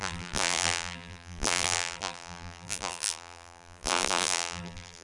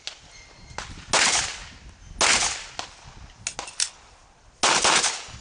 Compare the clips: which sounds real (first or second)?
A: second